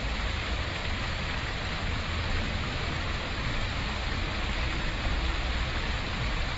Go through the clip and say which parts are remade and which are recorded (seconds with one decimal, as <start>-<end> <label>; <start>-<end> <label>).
0.0-5.1 remade; 5.1-6.6 recorded

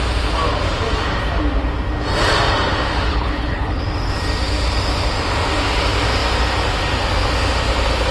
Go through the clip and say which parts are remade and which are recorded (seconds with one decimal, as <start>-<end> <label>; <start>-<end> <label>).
0.0-3.1 recorded; 3.1-3.8 remade; 3.8-8.1 recorded

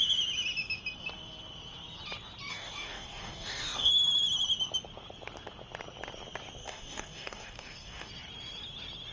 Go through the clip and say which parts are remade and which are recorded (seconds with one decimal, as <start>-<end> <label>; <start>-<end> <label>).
0.0-2.5 recorded; 2.5-3.9 remade; 3.9-6.6 recorded; 6.6-8.1 remade; 8.1-9.1 recorded

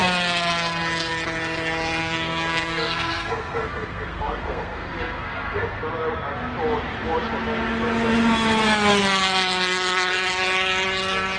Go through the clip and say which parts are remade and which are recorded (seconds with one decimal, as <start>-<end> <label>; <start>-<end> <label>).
0.0-2.0 recorded; 2.0-5.8 remade; 5.8-11.4 recorded

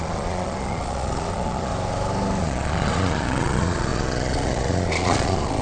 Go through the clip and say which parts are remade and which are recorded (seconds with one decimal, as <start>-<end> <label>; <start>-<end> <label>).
0.0-1.7 remade; 1.7-2.4 recorded; 2.4-5.6 remade

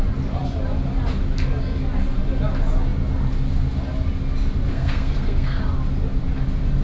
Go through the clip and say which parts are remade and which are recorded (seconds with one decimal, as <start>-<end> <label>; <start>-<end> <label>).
0.0-4.7 recorded; 4.7-5.6 remade; 5.6-6.8 recorded

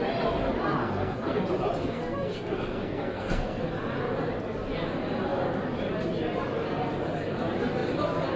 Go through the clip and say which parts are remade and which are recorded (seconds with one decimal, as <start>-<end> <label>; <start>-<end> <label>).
0.0-0.8 recorded; 0.8-1.4 remade; 1.4-1.8 recorded; 1.8-3.7 remade; 3.7-8.4 recorded